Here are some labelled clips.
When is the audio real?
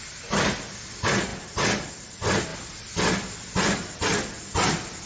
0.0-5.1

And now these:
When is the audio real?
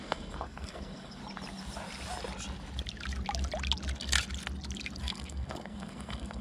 1.2-5.0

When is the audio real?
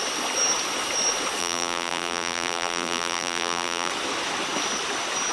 0.0-1.4; 3.9-5.3